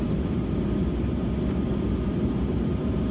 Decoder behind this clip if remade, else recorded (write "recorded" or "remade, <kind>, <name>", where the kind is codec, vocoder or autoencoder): recorded